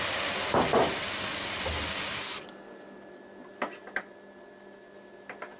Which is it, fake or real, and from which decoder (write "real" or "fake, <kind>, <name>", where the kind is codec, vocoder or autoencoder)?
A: real